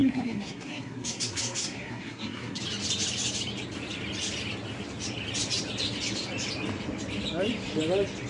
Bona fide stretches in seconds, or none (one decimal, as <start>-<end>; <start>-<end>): 2.6-8.3